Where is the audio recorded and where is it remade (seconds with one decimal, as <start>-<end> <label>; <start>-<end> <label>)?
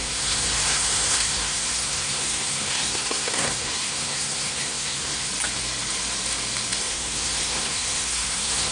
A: 0.0-5.3 remade; 5.3-6.8 recorded; 6.8-8.7 remade